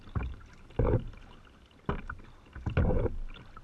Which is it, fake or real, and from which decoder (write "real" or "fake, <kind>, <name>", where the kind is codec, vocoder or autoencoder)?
real